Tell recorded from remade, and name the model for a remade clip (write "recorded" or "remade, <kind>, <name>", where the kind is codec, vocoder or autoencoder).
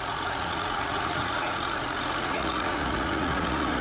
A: remade, vocoder, Vocos